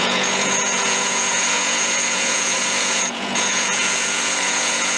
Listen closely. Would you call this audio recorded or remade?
remade